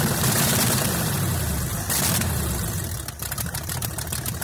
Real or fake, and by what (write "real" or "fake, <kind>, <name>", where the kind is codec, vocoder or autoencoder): fake, vocoder, BigVGAN v2